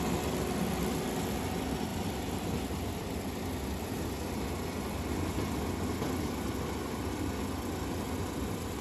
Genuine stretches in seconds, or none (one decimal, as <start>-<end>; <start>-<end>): 0.0-1.9; 3.1-8.8